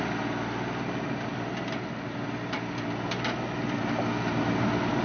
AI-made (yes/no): no